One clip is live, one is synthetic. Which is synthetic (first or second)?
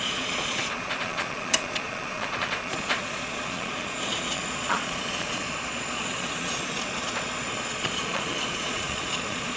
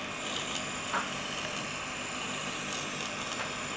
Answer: first